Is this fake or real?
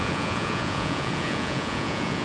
fake